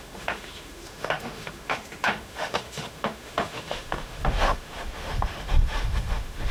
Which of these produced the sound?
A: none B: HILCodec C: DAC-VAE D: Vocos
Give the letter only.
C